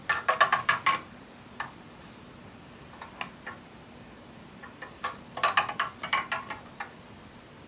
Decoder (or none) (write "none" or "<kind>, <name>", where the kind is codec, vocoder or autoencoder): none